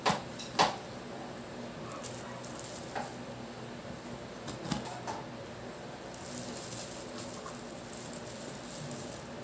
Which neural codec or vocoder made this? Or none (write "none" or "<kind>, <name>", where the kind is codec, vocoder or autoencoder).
none